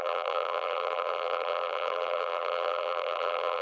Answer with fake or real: fake